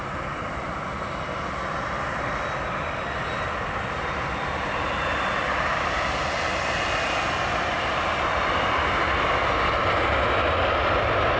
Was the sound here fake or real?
real